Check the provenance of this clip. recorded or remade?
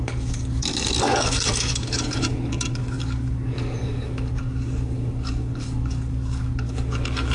remade